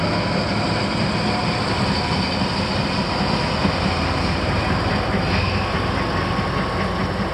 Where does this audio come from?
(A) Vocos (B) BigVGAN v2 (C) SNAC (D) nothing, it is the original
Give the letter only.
D